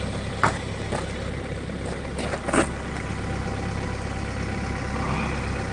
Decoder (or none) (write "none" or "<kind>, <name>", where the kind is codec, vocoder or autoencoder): none